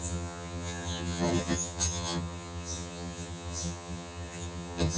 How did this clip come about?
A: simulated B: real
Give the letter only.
A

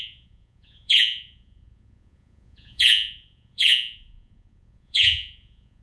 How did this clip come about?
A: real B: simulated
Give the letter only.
B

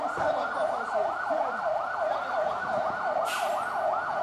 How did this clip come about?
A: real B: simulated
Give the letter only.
A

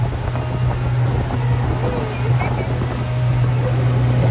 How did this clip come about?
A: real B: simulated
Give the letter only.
A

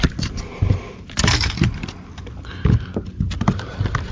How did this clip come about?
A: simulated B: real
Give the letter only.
B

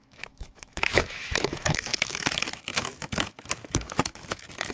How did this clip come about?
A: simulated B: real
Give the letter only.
A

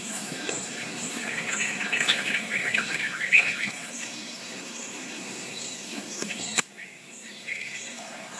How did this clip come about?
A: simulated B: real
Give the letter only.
A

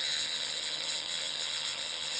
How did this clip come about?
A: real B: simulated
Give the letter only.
B